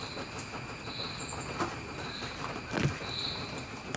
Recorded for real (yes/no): yes